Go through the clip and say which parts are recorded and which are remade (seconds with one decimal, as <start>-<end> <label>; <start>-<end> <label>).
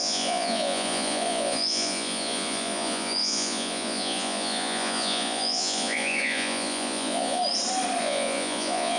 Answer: 0.0-7.4 remade; 7.4-8.0 recorded; 8.0-9.0 remade